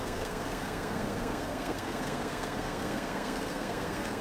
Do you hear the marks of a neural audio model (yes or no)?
yes